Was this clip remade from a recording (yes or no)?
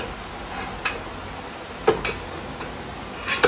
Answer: no